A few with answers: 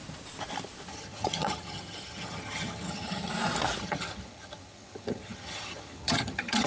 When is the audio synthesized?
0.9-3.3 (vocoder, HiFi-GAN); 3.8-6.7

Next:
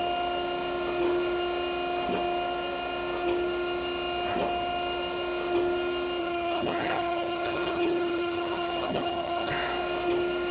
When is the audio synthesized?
6.2-9.5 (vocoder, HiFi-GAN)

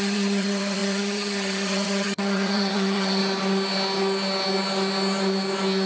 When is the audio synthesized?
0.0-3.2 (vocoder, HiFi-GAN)